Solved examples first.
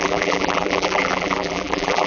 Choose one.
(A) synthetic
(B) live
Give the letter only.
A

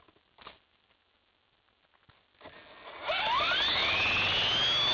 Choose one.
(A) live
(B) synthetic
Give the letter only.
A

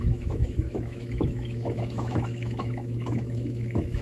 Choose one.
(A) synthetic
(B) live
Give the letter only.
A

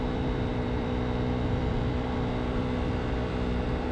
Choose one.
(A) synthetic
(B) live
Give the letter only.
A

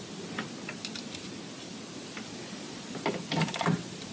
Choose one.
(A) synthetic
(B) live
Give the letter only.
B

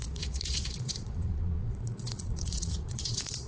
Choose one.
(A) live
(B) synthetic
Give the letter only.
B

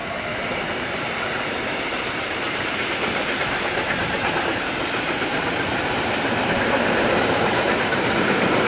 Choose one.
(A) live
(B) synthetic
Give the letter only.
B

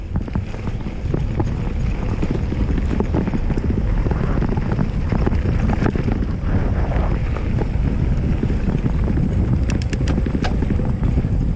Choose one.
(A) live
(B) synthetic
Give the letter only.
A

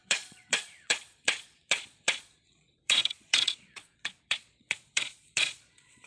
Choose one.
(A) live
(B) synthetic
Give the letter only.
B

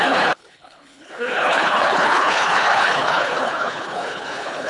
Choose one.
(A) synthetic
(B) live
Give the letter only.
A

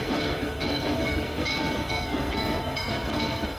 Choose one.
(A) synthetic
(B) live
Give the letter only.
A